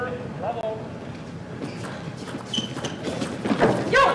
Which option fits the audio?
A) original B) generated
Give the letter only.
A